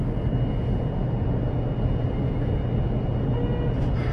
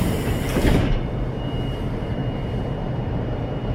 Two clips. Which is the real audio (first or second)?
first